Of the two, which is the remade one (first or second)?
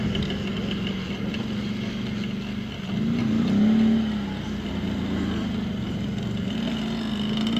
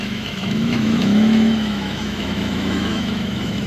second